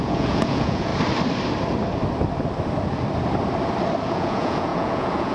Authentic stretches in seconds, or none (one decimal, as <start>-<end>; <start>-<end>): 0.9-4.0